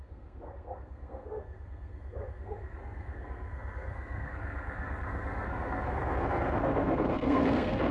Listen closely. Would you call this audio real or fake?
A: fake